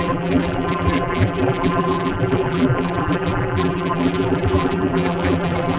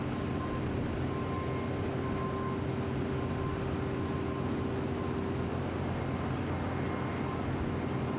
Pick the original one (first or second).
second